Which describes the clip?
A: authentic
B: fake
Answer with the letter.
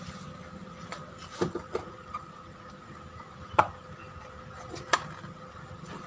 A